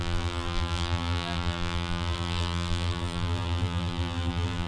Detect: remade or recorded remade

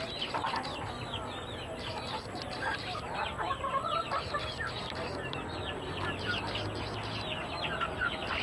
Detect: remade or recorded remade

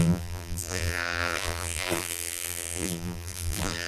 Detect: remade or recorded remade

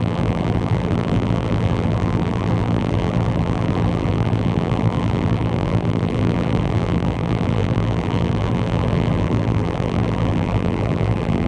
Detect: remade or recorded remade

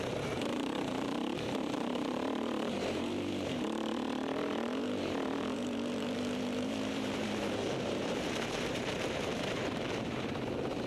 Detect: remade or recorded remade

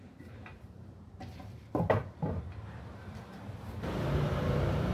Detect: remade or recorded remade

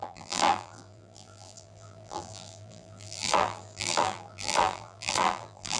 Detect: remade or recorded remade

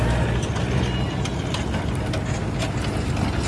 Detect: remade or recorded recorded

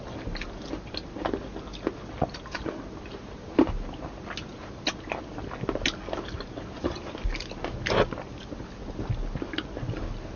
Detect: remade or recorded recorded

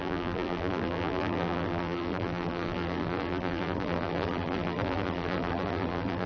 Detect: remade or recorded remade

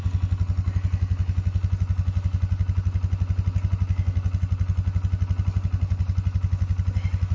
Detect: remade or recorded recorded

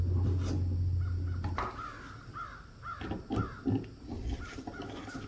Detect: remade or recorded recorded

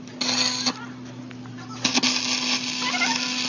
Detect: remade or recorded recorded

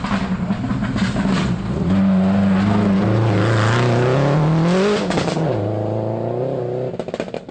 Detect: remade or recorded recorded